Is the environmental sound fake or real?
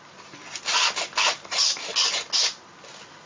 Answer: real